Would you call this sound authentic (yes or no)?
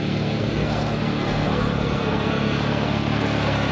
no